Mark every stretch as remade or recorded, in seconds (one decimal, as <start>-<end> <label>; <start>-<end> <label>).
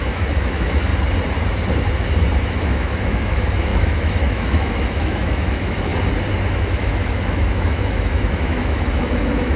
0.0-0.9 remade; 0.9-2.4 recorded; 2.4-5.9 remade; 5.9-6.5 recorded; 6.5-9.6 remade